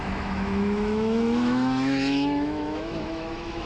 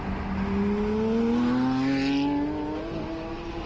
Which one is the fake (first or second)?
first